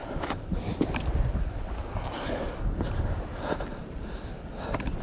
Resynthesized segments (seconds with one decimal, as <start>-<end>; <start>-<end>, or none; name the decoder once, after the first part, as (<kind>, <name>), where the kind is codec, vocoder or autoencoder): none

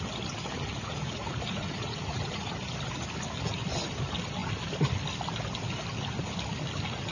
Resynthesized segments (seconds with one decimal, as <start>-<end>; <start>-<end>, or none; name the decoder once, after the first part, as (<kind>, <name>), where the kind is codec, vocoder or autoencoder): 0.7-2.5 (vocoder, Vocos)

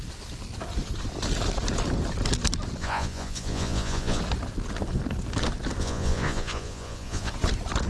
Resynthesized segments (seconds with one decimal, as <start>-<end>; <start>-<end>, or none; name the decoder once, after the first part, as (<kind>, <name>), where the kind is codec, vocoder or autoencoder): 2.8-4.2 (vocoder, Vocos); 5.8-7.3